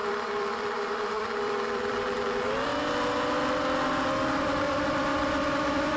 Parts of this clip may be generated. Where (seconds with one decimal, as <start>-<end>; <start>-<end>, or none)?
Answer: 0.0-2.7; 4.6-5.1

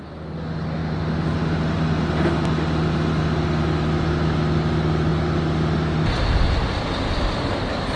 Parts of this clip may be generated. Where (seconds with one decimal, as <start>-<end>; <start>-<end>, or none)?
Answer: none

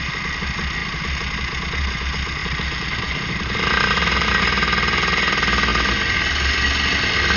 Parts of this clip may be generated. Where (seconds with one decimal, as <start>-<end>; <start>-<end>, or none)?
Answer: 0.8-1.5; 2.4-4.4

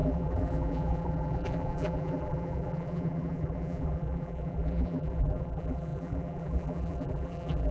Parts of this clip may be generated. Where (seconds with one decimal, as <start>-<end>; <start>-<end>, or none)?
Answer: 0.0-7.7

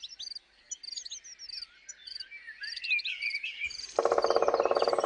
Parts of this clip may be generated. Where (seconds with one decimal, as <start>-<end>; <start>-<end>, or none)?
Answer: 2.0-5.1

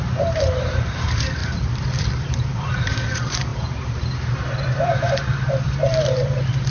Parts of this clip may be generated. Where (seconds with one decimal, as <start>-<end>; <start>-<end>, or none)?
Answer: 0.0-6.7

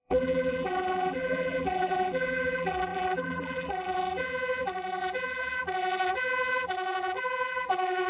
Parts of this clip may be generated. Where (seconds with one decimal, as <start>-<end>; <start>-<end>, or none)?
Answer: 0.0-8.1